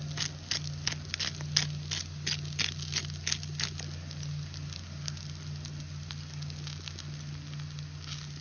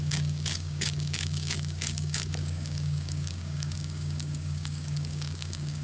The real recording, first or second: first